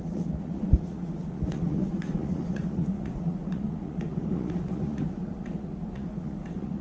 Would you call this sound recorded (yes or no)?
no